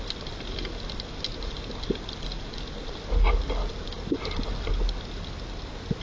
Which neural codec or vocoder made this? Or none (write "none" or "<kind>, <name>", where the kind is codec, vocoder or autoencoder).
none